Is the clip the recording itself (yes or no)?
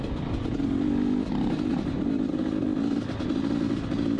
yes